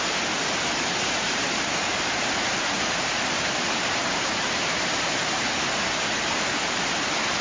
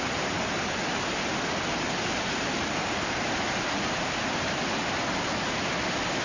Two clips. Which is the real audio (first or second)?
second